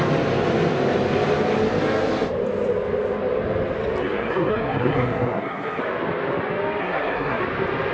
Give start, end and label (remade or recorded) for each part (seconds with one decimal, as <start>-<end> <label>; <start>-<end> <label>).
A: 0.0-4.0 recorded; 4.0-5.8 remade; 5.8-6.8 recorded; 6.8-7.4 remade; 7.4-7.9 recorded